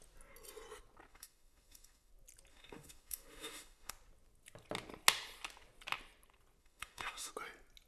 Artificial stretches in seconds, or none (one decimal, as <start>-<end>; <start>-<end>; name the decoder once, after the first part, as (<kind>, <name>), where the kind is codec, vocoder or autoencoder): 1.1-2.1 (autoencoder, DAC-VAE); 2.5-3.9; 6.6-7.3